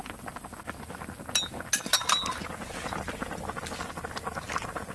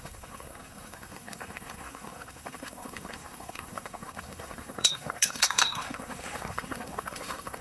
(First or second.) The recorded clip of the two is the first